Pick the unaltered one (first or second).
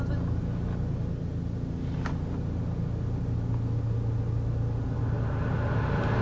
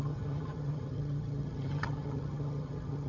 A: first